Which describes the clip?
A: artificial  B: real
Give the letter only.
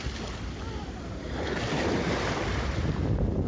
B